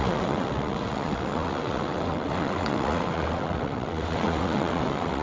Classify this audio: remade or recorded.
remade